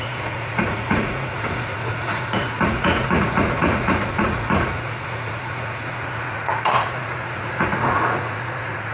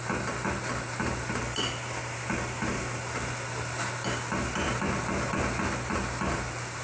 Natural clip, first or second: second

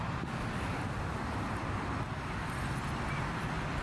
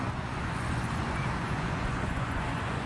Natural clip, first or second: first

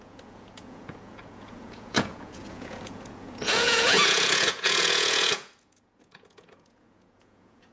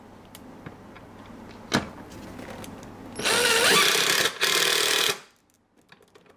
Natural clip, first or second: second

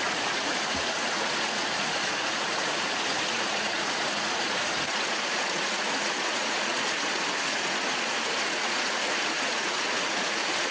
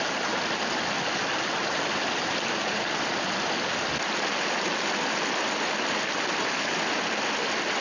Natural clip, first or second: second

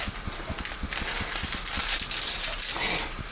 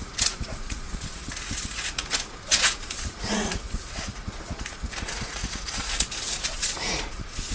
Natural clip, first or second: first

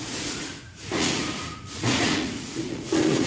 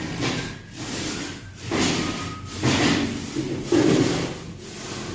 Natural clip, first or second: second